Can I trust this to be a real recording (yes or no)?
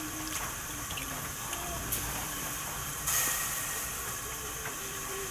no